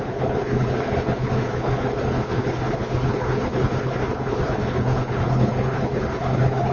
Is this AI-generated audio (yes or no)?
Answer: yes